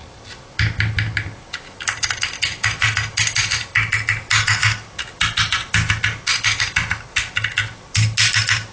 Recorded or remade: recorded